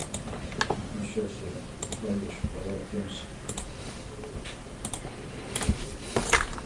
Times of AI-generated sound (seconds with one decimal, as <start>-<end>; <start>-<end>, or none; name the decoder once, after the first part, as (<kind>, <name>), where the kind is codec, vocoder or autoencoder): none